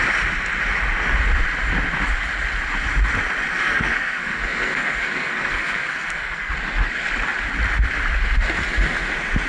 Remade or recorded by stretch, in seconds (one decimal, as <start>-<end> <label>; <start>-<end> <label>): 0.0-3.5 recorded; 3.5-6.5 remade; 6.5-9.5 recorded